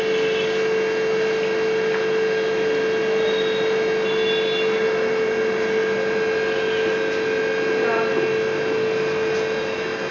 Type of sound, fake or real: real